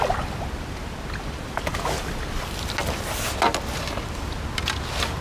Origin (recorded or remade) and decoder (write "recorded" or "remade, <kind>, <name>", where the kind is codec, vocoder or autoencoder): recorded